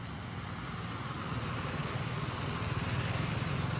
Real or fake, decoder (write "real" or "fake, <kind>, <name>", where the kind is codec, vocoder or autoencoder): real